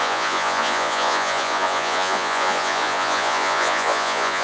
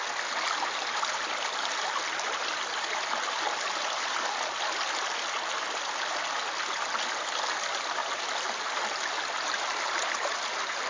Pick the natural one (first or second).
second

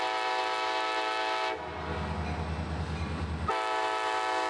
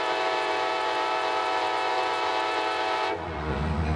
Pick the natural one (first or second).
first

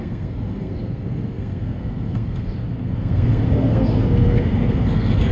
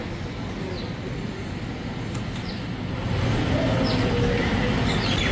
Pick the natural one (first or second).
second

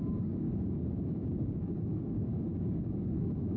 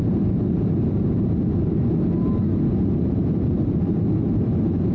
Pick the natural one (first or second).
second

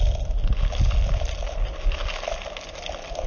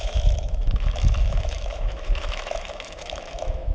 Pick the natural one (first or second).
first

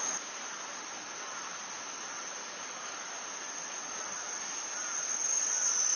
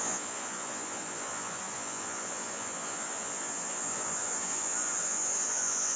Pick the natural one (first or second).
first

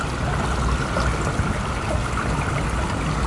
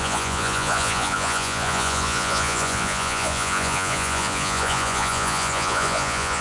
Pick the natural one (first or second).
first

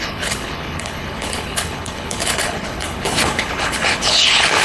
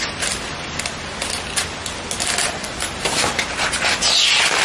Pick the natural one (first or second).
second